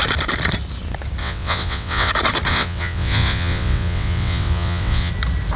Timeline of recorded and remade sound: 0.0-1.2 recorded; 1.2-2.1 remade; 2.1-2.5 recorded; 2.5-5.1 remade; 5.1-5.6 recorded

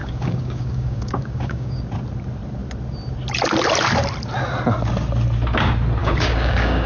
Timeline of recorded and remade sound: 0.0-1.8 remade; 1.8-6.0 recorded; 6.0-6.9 remade